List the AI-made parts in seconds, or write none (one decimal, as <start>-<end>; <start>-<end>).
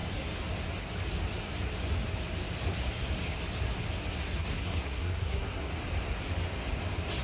4.2-5.7